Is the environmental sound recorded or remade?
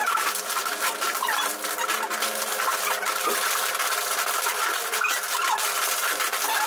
remade